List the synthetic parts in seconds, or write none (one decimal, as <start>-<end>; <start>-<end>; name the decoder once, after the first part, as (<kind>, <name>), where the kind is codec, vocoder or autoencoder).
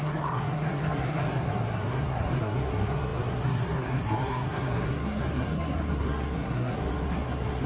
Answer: 0.0-7.7 (codec, SNAC)